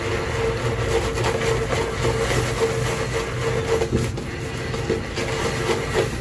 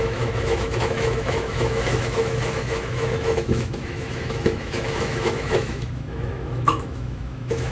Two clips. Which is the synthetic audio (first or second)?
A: second